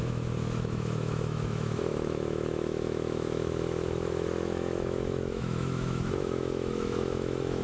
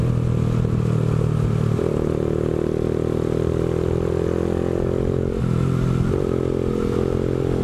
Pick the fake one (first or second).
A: first